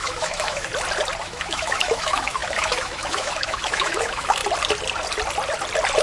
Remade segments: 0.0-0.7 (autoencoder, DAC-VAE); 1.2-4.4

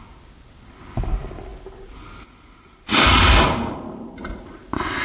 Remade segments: none

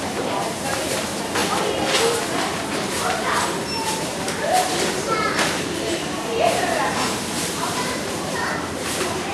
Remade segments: 0.0-1.4 (vocoder, BigVGAN v2); 2.2-9.3

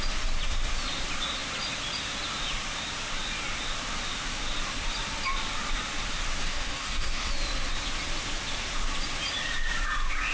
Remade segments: 6.4-7.3 (codec, DAC)

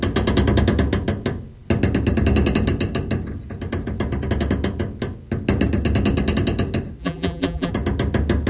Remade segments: 7.0-7.7 (vocoder, BigVGAN v2)

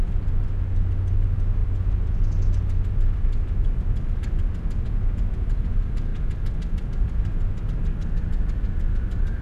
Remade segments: none